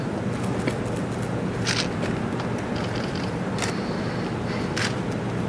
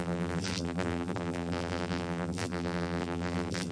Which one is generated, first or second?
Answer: second